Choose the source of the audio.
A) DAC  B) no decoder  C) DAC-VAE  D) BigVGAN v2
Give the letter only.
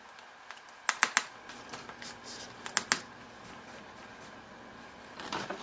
B